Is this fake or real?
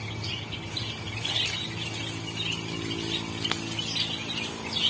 real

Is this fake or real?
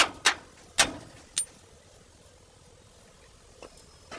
real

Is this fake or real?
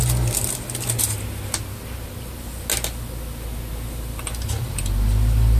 real